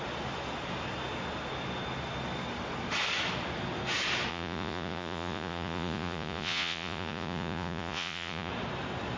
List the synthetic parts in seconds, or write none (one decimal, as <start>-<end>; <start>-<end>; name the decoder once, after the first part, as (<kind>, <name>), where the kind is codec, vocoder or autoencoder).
4.3-8.5 (vocoder, Vocos)